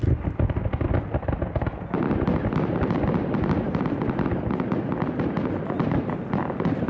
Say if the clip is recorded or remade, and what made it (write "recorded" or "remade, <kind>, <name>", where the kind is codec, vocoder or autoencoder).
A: recorded